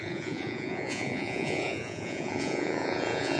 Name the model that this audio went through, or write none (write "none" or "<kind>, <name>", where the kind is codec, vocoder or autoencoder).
vocoder, Vocos